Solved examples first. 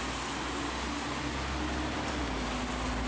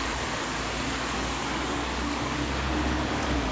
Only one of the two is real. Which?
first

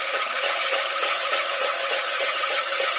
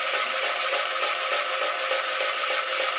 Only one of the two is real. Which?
second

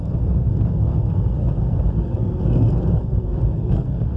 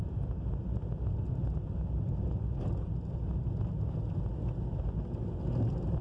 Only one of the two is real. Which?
second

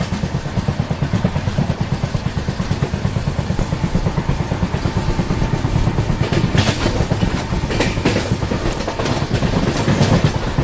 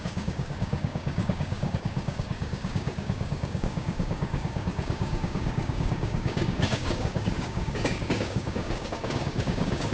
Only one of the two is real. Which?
first